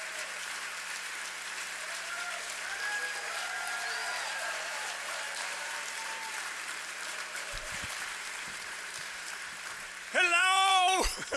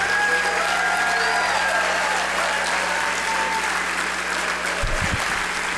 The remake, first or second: first